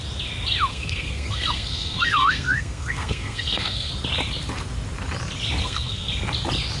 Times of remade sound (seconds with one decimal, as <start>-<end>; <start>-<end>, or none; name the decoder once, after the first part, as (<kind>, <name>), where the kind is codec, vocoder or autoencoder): 0.7-3.9 (codec, SNAC); 5.6-6.1